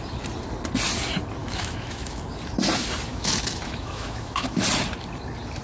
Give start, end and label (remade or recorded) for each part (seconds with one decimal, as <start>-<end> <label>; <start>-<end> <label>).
0.0-1.4 recorded; 1.4-2.2 remade; 2.2-3.1 recorded; 3.1-4.6 remade; 4.6-5.6 recorded